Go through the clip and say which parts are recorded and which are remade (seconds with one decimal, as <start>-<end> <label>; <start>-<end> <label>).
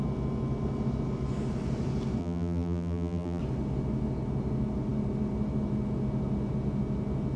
0.0-2.2 recorded; 2.2-3.4 remade; 3.4-7.4 recorded